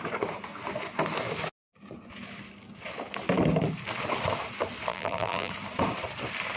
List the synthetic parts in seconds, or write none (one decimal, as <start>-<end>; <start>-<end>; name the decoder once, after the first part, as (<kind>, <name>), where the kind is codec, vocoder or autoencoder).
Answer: 4.9-5.5 (vocoder, BigVGAN v2)